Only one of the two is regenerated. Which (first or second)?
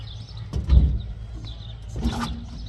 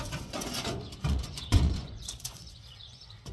second